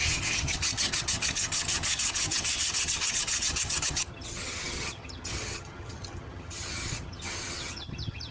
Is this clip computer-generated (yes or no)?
yes